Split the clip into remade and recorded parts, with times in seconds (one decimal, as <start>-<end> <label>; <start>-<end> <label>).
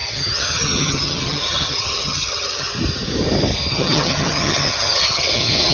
0.0-2.7 remade; 2.7-3.7 recorded; 3.7-5.7 remade